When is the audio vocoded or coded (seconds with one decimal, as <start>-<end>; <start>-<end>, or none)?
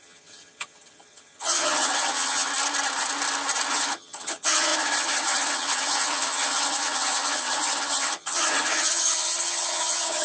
0.0-2.5; 3.7-10.2